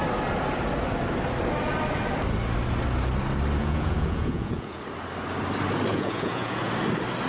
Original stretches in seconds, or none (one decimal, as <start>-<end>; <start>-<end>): 0.0-3.6; 4.8-5.9; 6.7-7.3